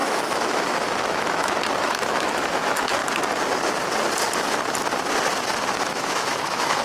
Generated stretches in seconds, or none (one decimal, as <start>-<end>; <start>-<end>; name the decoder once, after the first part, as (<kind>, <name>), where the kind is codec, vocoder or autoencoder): 0.0-3.0 (autoencoder, DAC-VAE); 5.8-6.8